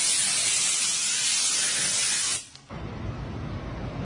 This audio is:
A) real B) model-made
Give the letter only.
A